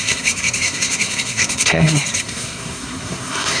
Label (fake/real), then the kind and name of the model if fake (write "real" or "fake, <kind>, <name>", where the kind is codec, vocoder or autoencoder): fake, codec, SNAC